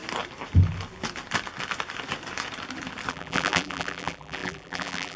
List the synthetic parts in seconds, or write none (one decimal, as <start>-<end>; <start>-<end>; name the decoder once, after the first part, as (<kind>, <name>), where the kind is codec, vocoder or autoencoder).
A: 3.1-5.2 (vocoder, BigVGAN v2)